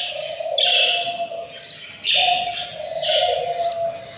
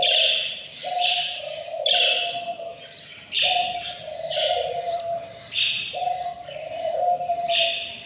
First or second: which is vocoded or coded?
second